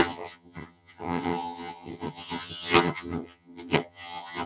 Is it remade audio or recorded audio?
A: remade